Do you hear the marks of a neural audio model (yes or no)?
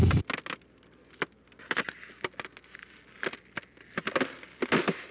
no